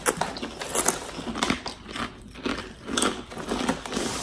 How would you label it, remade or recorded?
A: recorded